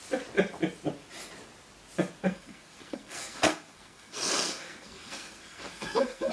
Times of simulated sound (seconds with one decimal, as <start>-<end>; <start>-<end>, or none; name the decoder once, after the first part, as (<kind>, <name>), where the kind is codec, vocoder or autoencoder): 2.2-6.3 (codec, SNAC)